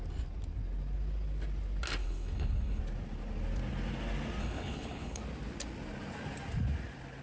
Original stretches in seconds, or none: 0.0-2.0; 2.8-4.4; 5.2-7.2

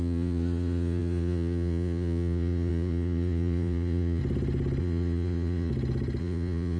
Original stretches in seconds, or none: 4.2-4.8; 5.7-6.2

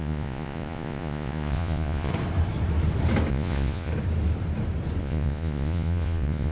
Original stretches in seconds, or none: 2.1-3.3; 3.9-5.0

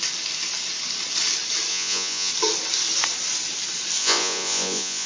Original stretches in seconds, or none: 0.0-1.7; 2.3-4.0